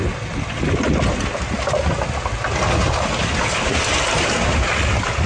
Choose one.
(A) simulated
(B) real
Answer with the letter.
B